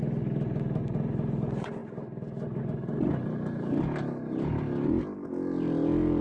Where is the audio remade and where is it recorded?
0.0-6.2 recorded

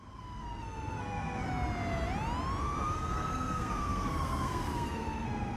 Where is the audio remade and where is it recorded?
0.0-1.5 remade; 1.5-2.6 recorded; 2.6-5.6 remade

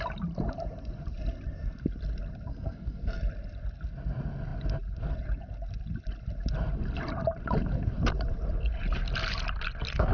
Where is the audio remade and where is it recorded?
0.0-2.5 recorded; 2.5-3.2 remade; 3.2-10.1 recorded

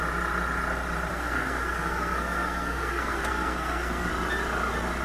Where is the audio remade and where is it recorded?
0.0-1.1 recorded; 1.1-4.1 remade; 4.1-5.0 recorded

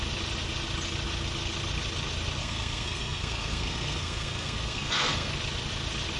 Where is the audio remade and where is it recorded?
0.0-2.4 recorded; 2.4-5.3 remade; 5.3-6.2 recorded

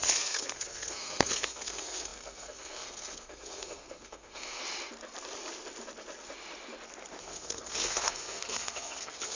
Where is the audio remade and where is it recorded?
0.0-4.6 remade; 4.6-7.2 recorded; 7.2-9.4 remade

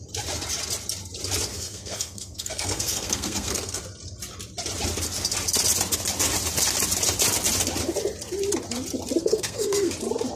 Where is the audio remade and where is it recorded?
0.0-1.5 recorded; 1.5-3.8 remade; 3.8-9.2 recorded; 9.2-9.9 remade; 9.9-10.4 recorded

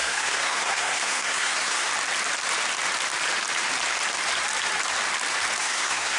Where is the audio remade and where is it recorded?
0.0-1.9 remade; 1.9-5.6 recorded; 5.6-6.2 remade